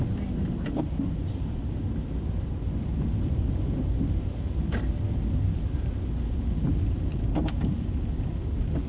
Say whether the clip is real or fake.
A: real